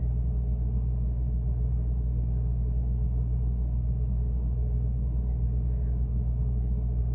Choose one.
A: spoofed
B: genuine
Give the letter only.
B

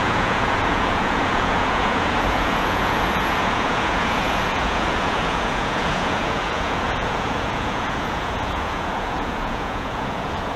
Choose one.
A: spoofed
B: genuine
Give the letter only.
A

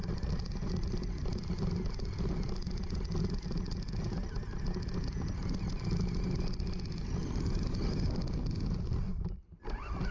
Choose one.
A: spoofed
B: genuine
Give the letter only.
B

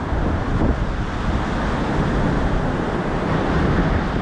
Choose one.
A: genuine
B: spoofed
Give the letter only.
A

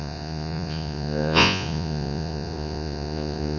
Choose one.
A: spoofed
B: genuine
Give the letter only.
A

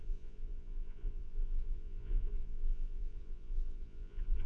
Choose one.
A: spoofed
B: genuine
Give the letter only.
A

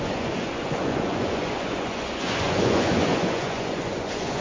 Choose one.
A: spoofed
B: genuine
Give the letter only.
A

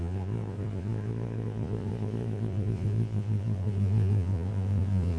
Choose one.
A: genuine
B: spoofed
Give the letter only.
B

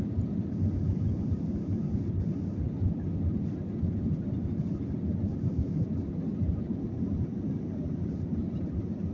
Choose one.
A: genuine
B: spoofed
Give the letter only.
A